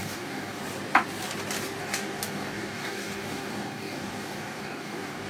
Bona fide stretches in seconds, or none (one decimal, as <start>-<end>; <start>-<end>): 0.6-1.8